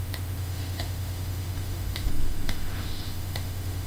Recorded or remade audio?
remade